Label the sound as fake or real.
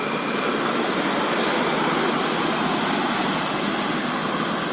real